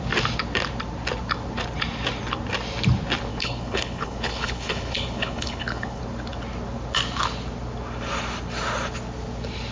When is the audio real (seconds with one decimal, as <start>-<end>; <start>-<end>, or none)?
0.0-3.3; 6.0-9.7